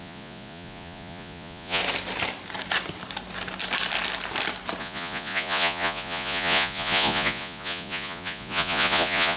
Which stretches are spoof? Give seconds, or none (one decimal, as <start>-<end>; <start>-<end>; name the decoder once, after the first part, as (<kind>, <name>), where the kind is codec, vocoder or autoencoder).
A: 0.0-1.8 (vocoder, Vocos); 4.8-9.4